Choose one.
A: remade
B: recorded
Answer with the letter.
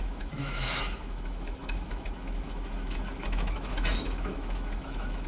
A